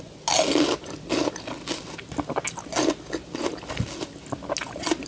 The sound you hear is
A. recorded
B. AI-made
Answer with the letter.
A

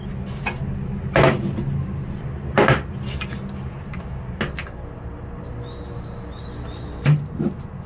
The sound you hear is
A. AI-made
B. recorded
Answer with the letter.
B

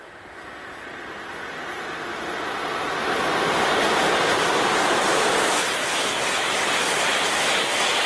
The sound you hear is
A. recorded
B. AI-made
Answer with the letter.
A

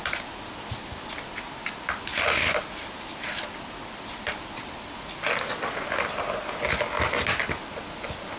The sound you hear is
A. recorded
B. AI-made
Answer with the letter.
A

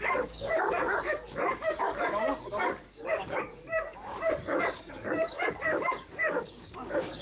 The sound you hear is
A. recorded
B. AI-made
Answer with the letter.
B